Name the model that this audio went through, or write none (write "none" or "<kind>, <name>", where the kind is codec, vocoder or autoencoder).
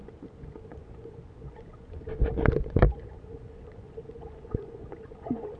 vocoder, Vocos